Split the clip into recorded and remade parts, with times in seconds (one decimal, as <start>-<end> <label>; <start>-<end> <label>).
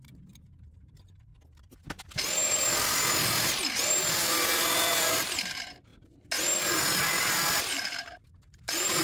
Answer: 0.0-1.3 remade; 1.3-5.1 recorded; 5.1-5.9 remade; 5.9-7.6 recorded; 7.6-9.0 remade